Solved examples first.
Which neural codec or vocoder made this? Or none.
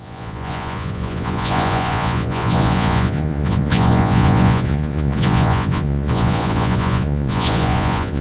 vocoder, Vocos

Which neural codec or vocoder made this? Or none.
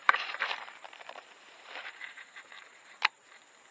vocoder, BigVGAN v2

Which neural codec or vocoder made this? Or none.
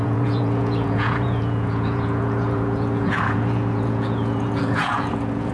vocoder, Vocos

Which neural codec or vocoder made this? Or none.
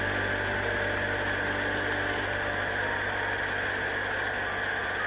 none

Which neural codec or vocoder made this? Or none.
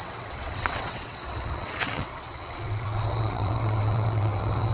vocoder, WaveNeXt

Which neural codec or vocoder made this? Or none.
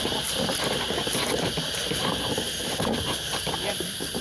none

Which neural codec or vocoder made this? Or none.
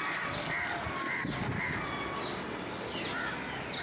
none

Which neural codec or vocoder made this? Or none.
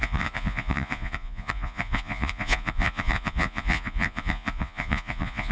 vocoder, Vocos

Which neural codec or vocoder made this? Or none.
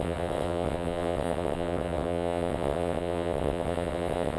vocoder, WaveNeXt